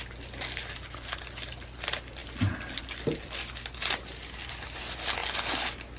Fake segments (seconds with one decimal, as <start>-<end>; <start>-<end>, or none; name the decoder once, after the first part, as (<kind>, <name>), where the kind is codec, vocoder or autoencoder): none